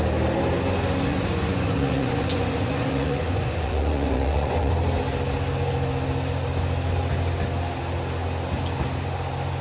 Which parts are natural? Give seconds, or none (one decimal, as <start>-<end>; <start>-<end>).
0.0-1.1; 4.7-9.6